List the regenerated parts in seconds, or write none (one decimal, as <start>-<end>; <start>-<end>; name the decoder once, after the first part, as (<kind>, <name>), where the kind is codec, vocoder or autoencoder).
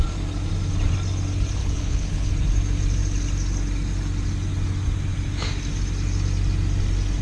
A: 1.6-2.3 (codec, HILCodec)